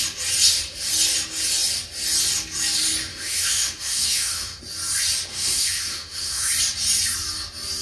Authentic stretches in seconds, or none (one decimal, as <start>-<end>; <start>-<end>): 0.0-3.1; 4.6-5.3; 6.5-7.8